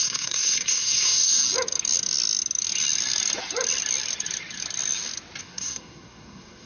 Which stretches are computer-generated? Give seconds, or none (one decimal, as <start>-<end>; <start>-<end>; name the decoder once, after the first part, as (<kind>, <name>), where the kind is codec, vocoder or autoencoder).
0.0-1.4 (codec, SNAC); 5.4-6.7